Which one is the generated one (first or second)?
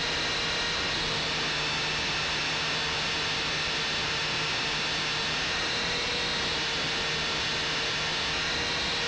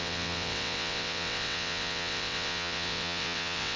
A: second